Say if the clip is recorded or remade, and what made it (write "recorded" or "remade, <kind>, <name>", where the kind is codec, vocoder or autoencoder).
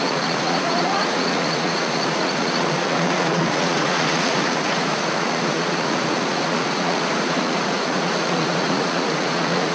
remade, vocoder, Vocos